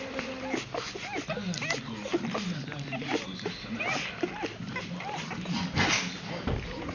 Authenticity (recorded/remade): recorded